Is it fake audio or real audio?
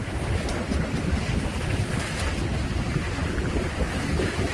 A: real